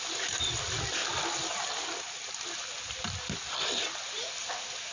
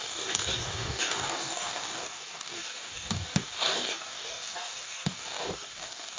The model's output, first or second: second